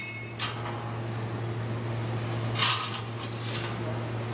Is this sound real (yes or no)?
yes